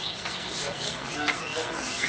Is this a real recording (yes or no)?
no